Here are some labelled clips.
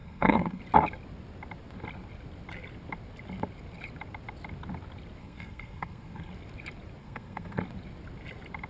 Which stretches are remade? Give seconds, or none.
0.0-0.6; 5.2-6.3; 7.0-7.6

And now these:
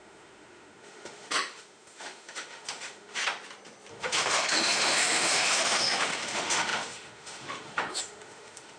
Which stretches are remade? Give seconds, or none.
0.0-3.2; 3.9-8.8

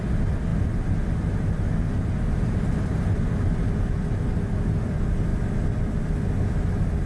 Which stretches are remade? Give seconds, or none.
none

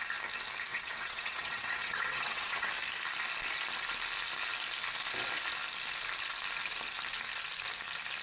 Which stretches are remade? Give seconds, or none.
0.7-2.7

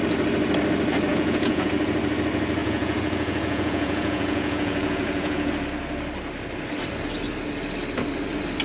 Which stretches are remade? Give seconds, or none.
1.1-1.7; 2.6-5.5